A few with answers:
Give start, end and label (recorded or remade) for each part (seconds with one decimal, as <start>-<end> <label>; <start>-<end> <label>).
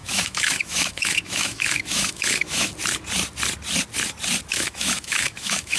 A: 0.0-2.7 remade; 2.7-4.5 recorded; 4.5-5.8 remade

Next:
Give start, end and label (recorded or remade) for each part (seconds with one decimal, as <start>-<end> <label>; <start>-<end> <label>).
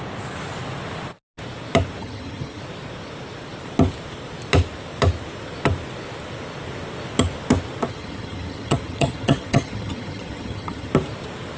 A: 0.0-2.0 recorded; 2.0-2.6 remade; 2.6-7.9 recorded; 7.9-10.9 remade; 10.9-11.6 recorded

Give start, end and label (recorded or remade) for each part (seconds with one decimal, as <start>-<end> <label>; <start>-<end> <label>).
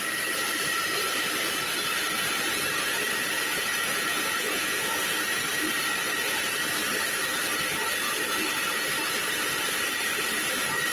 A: 0.0-2.5 recorded; 2.5-5.3 remade; 5.3-10.9 recorded